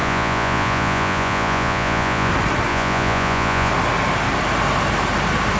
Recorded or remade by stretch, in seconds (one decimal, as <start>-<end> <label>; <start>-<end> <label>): 0.0-2.3 remade; 2.3-2.7 recorded; 2.7-3.7 remade; 3.7-5.6 recorded